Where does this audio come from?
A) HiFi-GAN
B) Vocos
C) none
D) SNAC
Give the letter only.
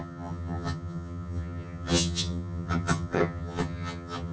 A